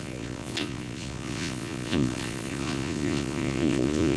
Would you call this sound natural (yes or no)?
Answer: no